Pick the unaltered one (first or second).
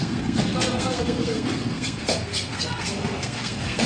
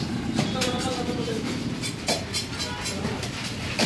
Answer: second